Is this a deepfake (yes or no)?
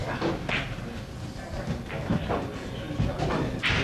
no